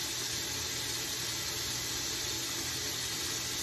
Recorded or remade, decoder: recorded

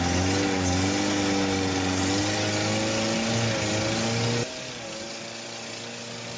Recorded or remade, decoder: recorded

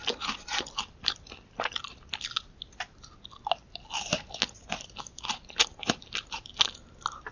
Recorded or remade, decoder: recorded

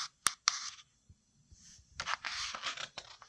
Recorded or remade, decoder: recorded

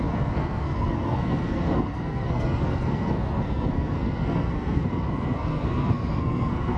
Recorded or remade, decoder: remade, codec, SNAC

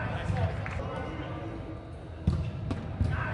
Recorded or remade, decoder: recorded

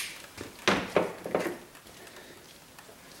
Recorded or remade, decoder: recorded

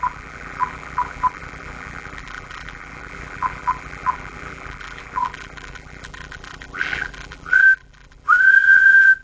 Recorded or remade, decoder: remade, vocoder, BigVGAN v2